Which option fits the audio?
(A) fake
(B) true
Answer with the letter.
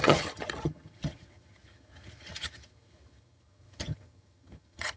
A